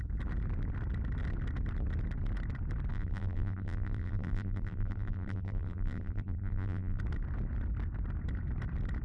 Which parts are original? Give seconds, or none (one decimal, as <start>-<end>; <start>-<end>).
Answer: 0.0-2.9; 7.0-9.0